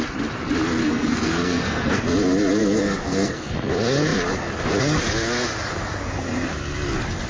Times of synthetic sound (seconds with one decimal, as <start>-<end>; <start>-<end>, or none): 0.8-2.0; 2.6-3.5